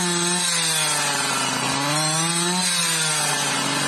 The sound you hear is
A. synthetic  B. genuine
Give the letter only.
B